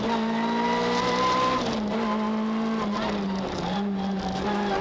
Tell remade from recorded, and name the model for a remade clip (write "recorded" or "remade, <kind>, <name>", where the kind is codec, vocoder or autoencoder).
recorded